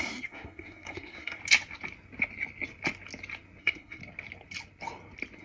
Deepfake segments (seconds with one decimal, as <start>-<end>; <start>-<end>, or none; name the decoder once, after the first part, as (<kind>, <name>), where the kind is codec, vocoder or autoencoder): 0.0-1.4 (codec, SNAC); 3.6-4.0